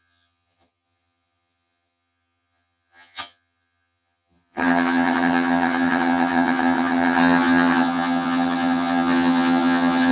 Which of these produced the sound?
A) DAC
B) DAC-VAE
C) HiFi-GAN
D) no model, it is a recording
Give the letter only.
C